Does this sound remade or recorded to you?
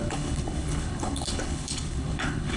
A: remade